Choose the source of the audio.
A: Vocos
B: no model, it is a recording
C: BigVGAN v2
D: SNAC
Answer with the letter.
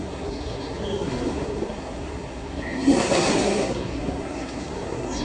D